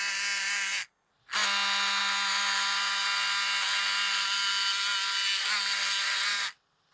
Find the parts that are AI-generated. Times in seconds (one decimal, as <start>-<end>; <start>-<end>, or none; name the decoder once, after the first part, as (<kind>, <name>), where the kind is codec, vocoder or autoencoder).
none